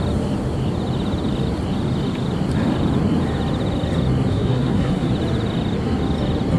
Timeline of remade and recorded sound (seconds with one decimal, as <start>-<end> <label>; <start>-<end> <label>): 0.0-4.3 recorded; 4.3-5.1 remade; 5.1-6.6 recorded